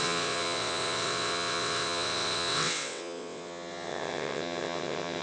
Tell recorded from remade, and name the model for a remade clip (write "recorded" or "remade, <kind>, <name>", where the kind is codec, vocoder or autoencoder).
remade, vocoder, WaveNeXt